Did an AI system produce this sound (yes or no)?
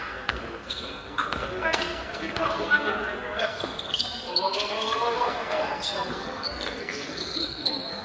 yes